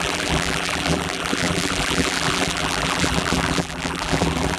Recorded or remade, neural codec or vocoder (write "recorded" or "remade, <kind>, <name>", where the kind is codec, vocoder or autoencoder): remade, vocoder, BigVGAN v2